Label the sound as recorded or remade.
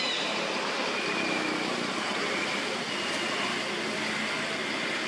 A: recorded